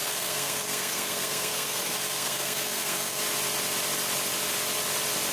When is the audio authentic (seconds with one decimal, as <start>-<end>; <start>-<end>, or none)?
3.2-5.3